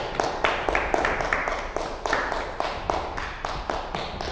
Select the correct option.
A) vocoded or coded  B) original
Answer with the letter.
B